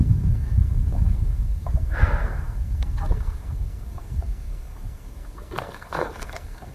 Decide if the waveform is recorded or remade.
remade